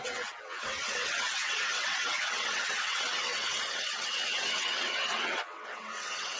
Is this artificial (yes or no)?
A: yes